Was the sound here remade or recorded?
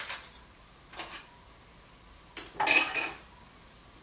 recorded